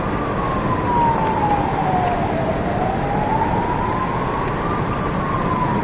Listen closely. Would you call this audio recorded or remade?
recorded